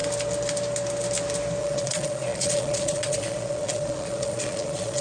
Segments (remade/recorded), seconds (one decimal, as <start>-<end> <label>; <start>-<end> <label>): 0.0-1.6 recorded; 1.6-5.0 remade